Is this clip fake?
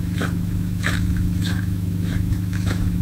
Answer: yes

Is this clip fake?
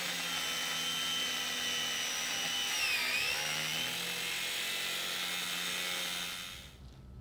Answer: no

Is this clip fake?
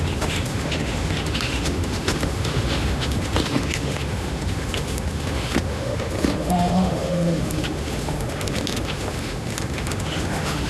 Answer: yes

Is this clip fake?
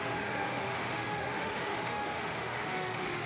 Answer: yes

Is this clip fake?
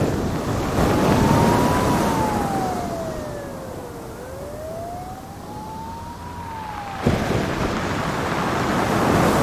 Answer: no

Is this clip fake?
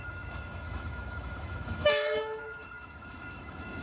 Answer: yes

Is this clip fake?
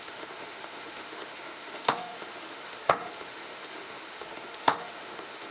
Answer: yes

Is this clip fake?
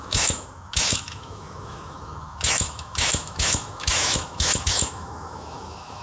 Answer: yes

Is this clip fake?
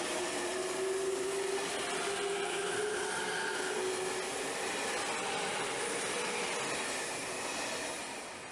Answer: no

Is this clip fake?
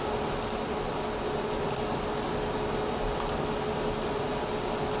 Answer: no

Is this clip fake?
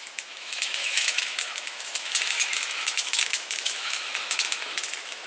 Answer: yes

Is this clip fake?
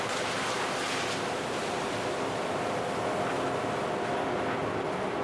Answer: no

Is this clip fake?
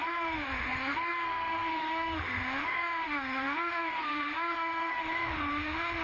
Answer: yes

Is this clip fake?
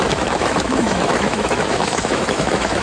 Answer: yes